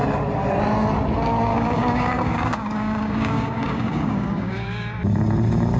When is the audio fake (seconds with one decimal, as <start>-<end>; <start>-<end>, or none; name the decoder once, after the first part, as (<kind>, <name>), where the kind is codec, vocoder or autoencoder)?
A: 1.5-5.0 (codec, DAC)